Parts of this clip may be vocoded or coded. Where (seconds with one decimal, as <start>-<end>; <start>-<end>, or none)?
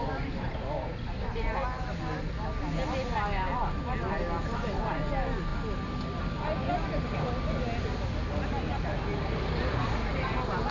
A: none